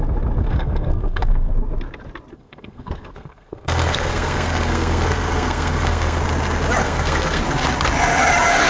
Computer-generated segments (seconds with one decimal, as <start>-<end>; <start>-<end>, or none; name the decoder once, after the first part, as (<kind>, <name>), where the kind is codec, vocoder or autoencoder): 0.4-1.5 (codec, SNAC); 2.3-6.2; 6.8-7.4